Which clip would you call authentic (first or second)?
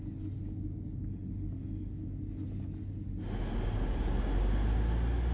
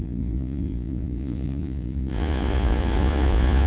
first